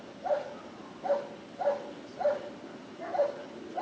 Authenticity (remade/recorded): recorded